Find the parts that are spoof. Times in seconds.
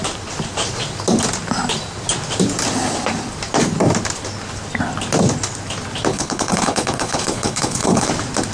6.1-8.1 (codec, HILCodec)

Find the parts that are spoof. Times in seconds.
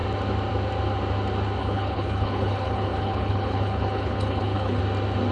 1.6-4.8 (codec, HILCodec)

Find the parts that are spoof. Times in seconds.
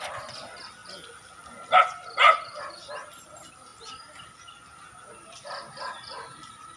none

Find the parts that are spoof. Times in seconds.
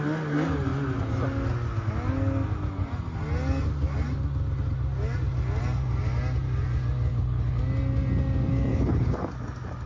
7.1-7.6 (codec, HILCodec); 8.7-9.3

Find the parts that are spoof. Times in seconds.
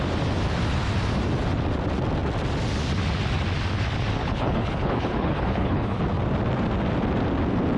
4.2-6.0 (codec, HILCodec)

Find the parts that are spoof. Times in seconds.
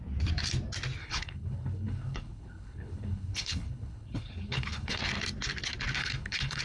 1.0-5.0 (codec, HILCodec); 6.0-6.6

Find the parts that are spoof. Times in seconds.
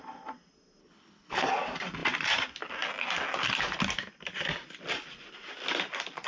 0.8-1.5 (codec, HILCodec)